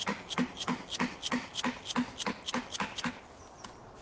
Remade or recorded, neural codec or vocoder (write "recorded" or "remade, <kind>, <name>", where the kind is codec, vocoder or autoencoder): recorded